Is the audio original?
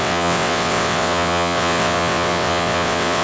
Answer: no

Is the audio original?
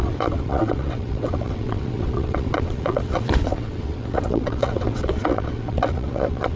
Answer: no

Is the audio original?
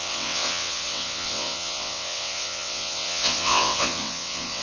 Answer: no